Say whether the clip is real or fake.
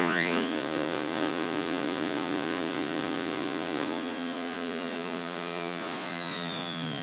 fake